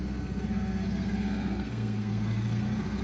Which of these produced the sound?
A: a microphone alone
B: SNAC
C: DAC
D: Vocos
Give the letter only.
B